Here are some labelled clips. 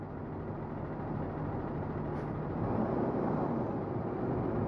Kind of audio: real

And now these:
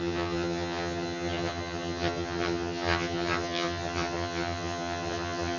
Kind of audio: fake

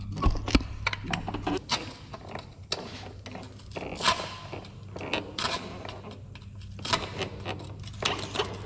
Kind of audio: real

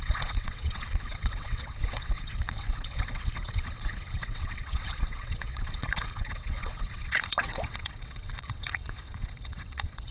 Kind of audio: fake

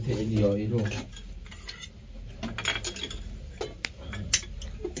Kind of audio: real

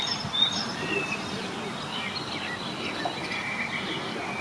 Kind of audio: real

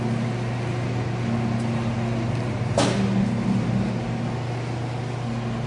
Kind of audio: real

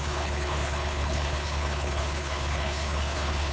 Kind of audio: fake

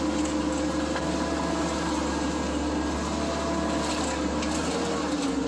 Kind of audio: real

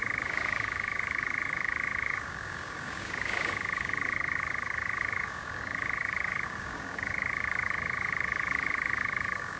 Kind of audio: fake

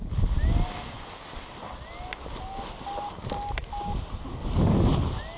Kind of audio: real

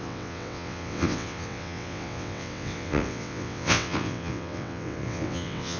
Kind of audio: fake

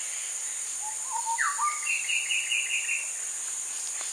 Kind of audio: real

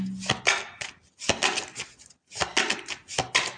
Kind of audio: real